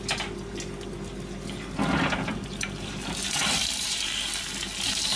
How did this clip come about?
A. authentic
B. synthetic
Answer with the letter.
A